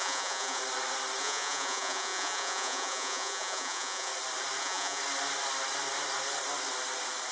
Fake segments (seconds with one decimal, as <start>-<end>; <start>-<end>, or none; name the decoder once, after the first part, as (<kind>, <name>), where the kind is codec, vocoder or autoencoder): 0.0-0.6 (vocoder, Vocos); 1.2-4.1; 4.6-5.0